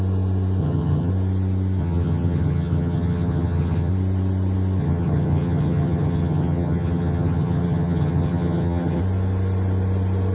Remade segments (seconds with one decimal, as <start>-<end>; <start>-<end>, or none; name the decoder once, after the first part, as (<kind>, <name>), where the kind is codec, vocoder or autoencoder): 0.6-1.1 (vocoder, HiFi-GAN); 1.8-3.9; 4.8-9.0